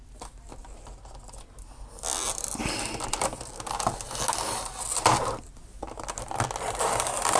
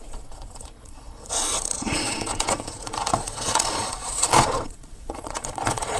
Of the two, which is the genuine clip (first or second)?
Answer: first